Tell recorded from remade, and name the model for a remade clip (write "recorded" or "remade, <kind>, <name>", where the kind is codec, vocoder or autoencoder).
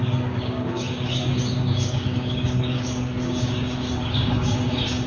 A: remade, codec, DAC